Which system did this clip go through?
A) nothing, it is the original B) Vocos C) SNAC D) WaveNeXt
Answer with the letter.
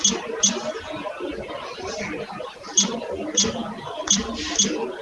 A